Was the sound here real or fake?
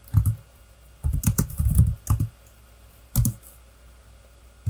real